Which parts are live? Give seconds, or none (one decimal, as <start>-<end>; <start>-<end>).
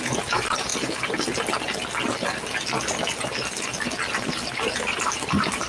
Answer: 0.7-4.1